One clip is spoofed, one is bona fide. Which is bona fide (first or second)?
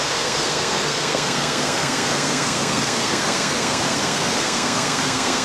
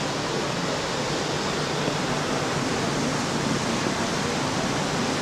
second